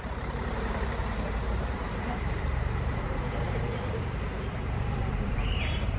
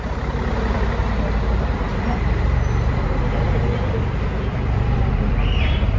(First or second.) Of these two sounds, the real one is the second